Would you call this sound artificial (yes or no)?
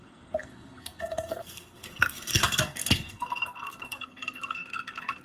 yes